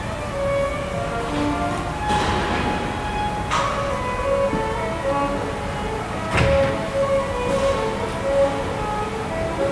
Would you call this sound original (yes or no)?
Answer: yes